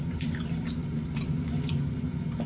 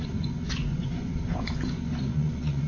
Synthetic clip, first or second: second